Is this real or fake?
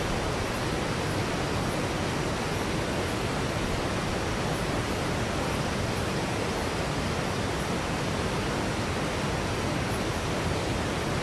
real